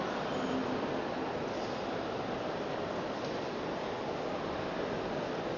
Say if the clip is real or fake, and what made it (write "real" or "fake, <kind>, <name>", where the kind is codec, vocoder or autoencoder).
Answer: real